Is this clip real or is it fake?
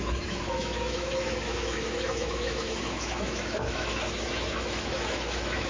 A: fake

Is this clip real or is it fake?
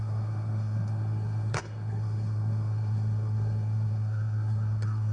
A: fake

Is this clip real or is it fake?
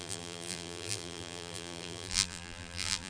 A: fake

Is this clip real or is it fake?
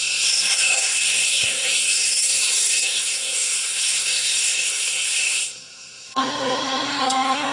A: fake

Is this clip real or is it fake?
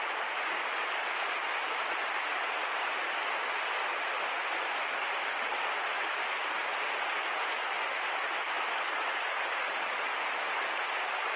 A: real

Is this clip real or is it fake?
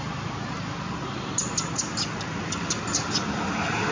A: real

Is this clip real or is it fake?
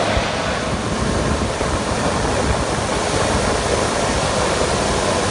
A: real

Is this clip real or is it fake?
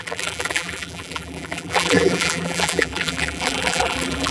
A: fake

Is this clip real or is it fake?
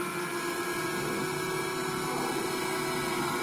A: real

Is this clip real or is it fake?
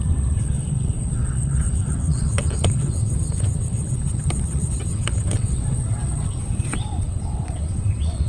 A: fake